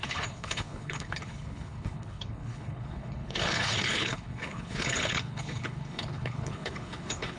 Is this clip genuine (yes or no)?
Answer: no